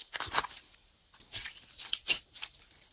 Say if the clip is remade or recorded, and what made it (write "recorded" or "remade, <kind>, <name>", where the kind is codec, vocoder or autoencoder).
recorded